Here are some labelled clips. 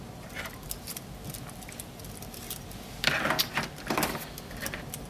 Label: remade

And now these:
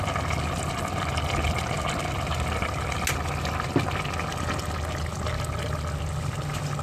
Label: recorded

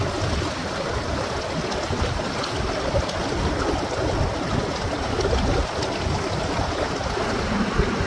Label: recorded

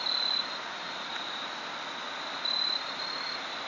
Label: recorded